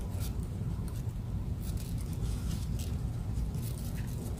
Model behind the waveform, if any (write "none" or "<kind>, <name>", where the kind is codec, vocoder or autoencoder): none